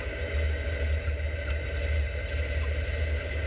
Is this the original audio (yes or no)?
yes